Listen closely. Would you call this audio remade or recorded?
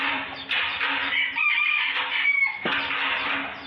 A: remade